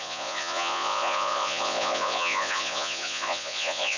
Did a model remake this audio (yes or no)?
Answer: yes